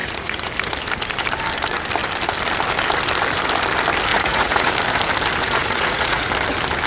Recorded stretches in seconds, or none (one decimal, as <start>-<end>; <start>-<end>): 0.5-4.1; 4.7-5.4; 6.3-6.9